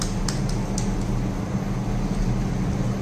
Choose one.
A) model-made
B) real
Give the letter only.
B